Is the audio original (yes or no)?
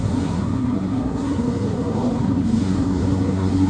no